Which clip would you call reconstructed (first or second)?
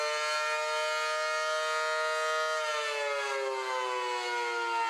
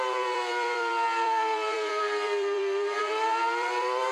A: second